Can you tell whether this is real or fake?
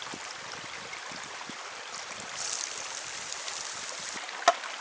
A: fake